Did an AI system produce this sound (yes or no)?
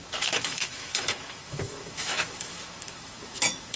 yes